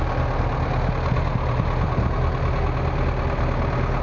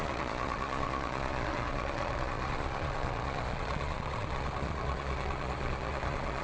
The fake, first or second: second